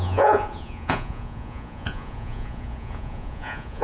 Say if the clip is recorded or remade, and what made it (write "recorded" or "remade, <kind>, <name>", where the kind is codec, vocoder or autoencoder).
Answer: remade, vocoder, Vocos